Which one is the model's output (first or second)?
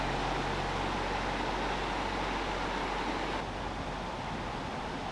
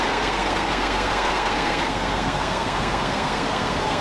second